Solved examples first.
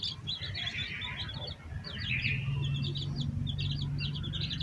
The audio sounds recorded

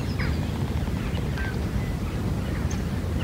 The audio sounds recorded